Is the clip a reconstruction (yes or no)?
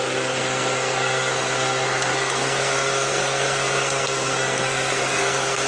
yes